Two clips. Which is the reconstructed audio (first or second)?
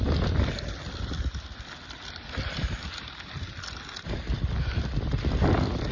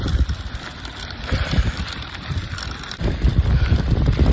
second